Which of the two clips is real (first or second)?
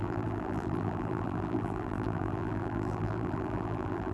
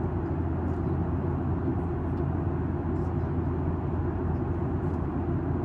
second